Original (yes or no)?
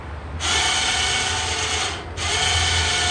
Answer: yes